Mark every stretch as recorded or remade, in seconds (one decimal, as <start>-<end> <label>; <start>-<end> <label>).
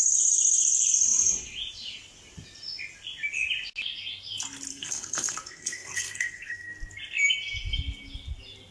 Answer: 0.0-4.7 recorded; 4.7-6.7 remade; 6.7-8.7 recorded